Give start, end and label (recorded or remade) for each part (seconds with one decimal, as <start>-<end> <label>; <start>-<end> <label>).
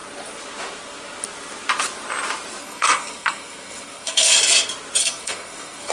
0.0-2.6 recorded; 2.6-4.4 remade; 4.4-5.0 recorded; 5.0-5.9 remade